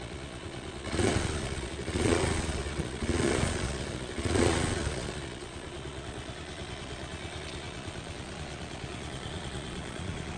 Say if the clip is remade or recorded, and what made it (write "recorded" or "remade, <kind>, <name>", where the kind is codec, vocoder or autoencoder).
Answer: remade, vocoder, Vocos